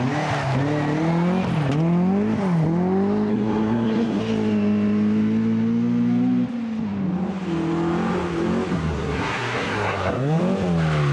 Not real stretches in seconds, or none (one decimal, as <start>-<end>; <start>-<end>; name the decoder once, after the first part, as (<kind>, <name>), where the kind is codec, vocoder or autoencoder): 3.3-4.2 (codec, SNAC); 8.7-10.4